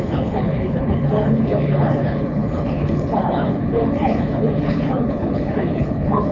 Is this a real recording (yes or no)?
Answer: no